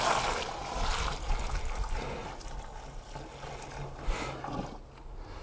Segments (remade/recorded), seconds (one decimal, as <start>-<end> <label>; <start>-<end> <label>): 0.0-5.4 recorded